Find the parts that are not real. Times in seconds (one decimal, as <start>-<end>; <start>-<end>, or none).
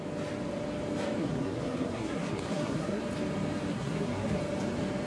1.2-3.0; 3.7-4.4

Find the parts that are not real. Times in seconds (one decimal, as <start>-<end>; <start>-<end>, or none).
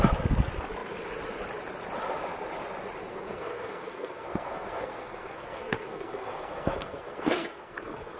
3.1-8.2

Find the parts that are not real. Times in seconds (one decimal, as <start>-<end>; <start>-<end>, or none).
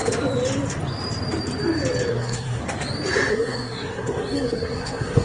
2.1-2.6; 3.3-5.2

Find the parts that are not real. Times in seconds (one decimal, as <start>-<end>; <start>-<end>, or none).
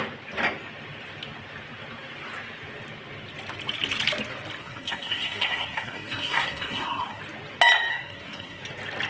4.6-7.2; 7.9-8.6